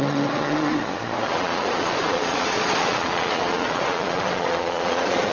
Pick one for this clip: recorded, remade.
remade